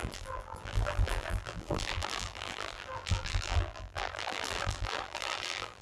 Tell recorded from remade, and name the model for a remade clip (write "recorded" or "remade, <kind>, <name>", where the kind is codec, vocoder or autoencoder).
remade, vocoder, BigVGAN v2